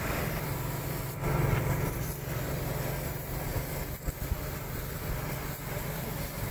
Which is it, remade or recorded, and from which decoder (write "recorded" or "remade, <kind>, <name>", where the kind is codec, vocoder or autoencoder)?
recorded